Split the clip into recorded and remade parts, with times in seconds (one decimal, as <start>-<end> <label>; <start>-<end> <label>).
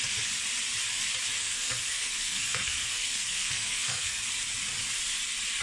0.0-1.4 recorded; 1.4-4.2 remade; 4.2-5.6 recorded